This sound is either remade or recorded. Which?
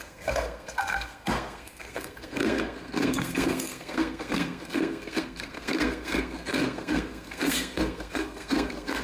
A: remade